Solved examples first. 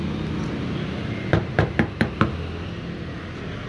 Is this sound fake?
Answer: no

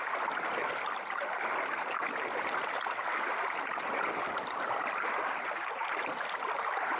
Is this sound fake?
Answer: no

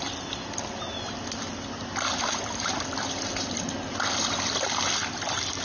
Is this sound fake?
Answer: no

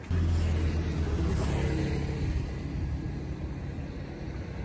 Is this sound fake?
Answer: no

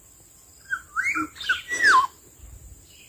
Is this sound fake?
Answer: no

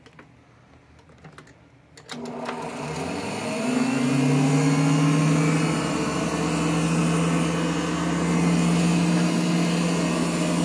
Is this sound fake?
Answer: no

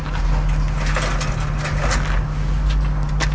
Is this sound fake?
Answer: no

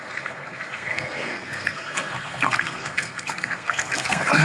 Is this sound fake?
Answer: yes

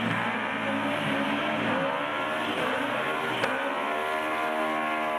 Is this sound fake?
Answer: no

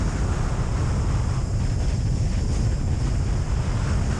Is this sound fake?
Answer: no